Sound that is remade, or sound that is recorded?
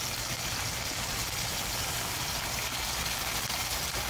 recorded